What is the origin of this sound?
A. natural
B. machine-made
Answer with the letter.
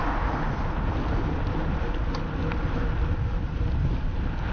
A